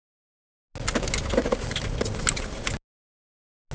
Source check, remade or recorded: recorded